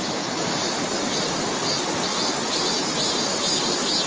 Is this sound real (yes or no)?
yes